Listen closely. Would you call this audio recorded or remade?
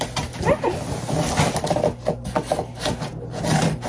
recorded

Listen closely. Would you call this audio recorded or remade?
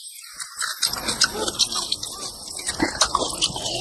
recorded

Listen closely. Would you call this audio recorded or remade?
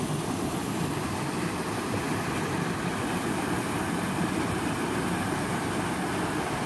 recorded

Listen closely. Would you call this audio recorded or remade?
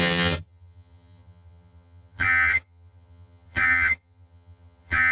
remade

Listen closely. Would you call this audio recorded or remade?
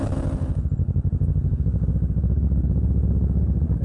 recorded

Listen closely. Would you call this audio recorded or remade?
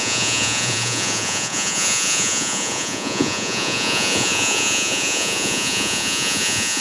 remade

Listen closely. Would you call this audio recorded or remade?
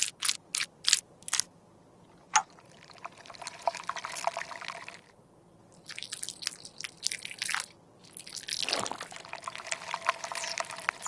recorded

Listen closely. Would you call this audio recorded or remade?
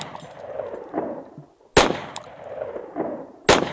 recorded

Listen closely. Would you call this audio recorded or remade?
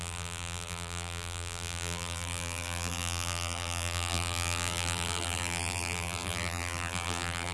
remade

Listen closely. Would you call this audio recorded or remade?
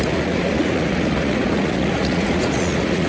remade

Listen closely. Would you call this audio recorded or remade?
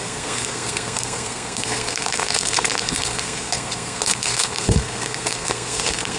remade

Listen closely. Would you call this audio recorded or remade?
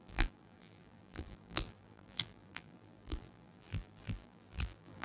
remade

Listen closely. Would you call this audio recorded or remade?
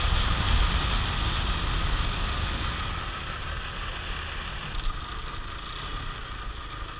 recorded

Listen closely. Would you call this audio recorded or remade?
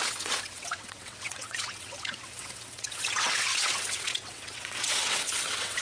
remade